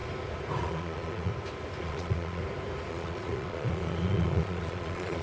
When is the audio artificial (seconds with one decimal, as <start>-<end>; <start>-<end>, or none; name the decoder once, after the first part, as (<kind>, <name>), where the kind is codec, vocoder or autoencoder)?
0.6-1.3 (vocoder, Vocos); 1.8-2.4; 2.9-5.2